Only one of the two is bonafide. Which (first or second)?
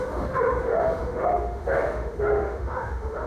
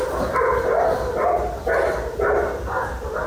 second